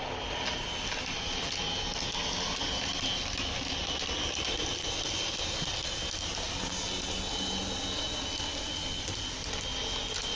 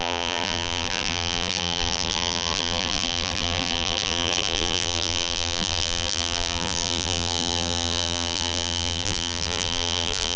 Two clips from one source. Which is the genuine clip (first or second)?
first